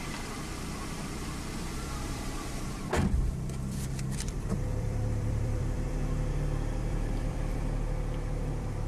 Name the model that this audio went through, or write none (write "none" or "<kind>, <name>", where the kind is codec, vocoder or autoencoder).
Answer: vocoder, BigVGAN v2